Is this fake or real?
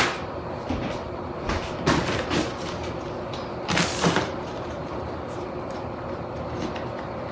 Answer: real